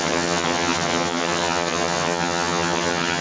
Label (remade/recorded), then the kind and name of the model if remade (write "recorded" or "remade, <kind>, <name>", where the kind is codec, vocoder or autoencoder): remade, vocoder, HiFi-GAN